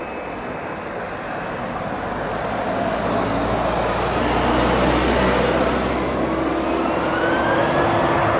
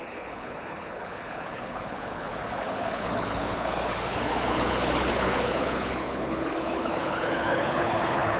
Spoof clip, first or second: second